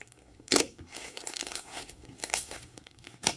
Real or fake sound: fake